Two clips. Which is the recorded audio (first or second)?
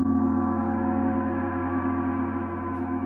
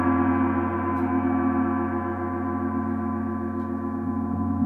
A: second